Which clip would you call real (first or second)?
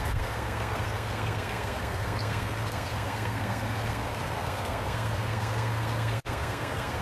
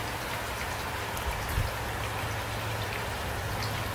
second